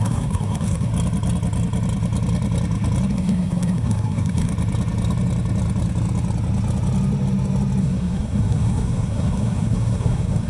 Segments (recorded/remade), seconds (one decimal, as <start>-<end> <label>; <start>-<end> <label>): 0.0-0.9 remade; 0.9-3.1 recorded; 3.1-4.5 remade; 4.5-7.8 recorded; 7.8-10.5 remade